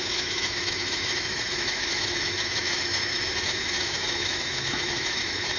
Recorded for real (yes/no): no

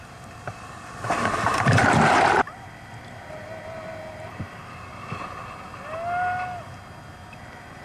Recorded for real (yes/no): yes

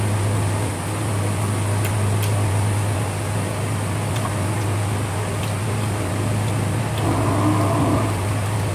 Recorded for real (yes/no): yes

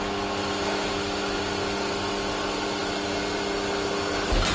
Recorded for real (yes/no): yes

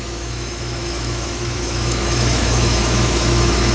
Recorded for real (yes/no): no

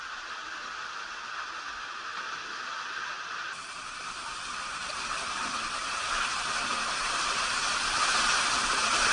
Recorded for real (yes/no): yes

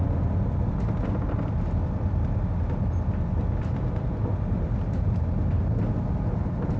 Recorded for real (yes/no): yes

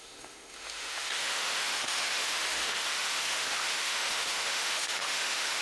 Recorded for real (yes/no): no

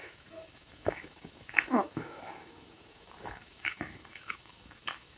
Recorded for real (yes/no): no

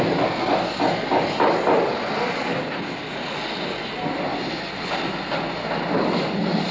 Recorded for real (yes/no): yes